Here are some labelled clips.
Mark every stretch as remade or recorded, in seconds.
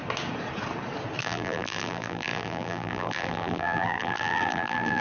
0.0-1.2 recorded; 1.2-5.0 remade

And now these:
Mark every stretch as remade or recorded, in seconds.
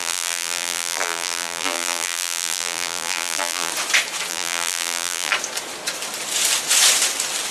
0.0-3.7 remade; 3.7-4.3 recorded; 4.3-5.3 remade; 5.3-7.5 recorded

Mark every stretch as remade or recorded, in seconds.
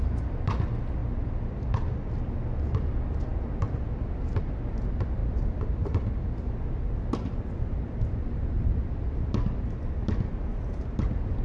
0.0-1.0 recorded; 1.0-2.1 remade; 2.1-5.2 recorded; 5.2-6.3 remade; 6.3-11.4 recorded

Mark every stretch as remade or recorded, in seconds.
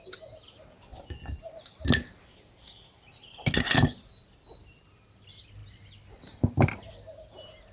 0.0-7.7 recorded